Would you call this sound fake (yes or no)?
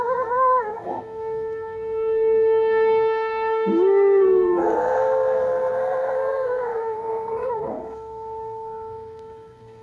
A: yes